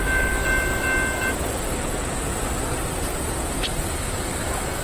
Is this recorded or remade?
recorded